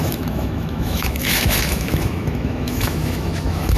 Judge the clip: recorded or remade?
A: remade